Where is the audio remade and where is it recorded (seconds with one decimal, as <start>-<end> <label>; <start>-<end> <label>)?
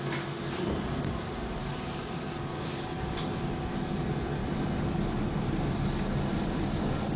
0.0-7.2 recorded